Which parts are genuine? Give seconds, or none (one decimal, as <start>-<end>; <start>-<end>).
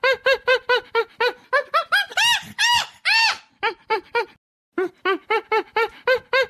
0.0-6.5